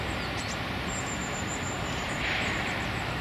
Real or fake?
real